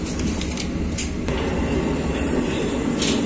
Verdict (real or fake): real